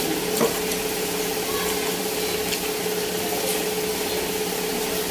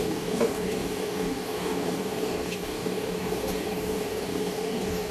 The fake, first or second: second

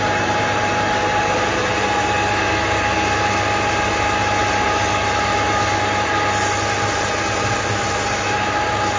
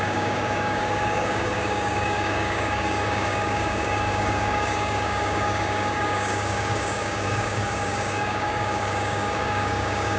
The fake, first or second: second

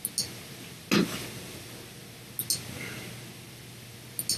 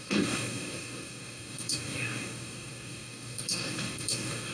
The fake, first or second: second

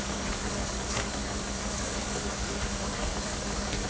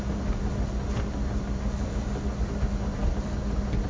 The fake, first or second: first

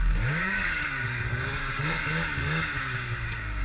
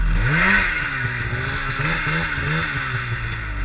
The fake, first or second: first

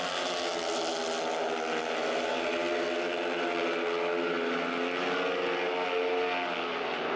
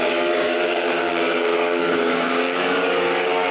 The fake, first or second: second